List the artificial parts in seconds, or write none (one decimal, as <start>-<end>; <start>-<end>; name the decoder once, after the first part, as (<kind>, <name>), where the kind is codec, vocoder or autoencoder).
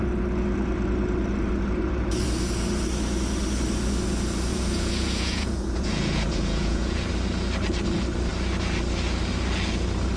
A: 4.5-7.1 (vocoder, Vocos)